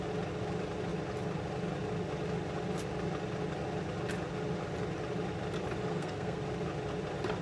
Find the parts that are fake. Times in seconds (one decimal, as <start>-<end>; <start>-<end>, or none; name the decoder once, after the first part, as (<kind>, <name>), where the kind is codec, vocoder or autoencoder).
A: 5.9-6.4 (codec, SNAC)